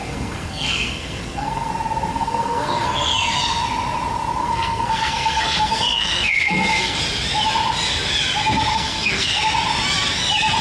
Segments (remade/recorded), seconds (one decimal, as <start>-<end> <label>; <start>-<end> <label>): 0.0-1.7 remade; 1.7-2.1 recorded; 2.1-3.6 remade; 3.6-4.4 recorded; 4.4-7.0 remade; 7.0-8.7 recorded; 8.7-9.4 remade; 9.4-10.6 recorded